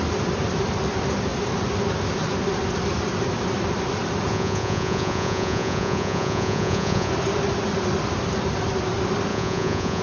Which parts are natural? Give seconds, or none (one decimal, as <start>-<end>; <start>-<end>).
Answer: 0.0-4.3; 7.1-9.3